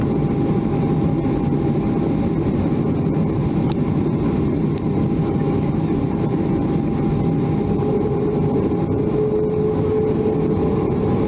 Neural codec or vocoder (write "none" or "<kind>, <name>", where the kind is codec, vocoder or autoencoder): none